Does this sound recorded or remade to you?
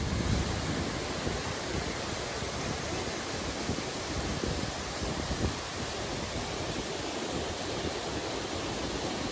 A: recorded